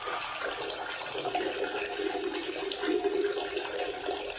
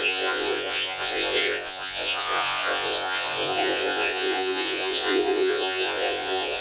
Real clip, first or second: first